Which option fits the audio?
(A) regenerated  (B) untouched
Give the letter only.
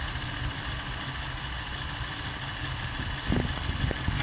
B